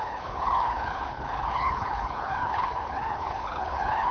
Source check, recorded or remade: remade